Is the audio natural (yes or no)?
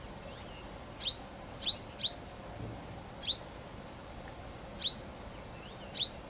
yes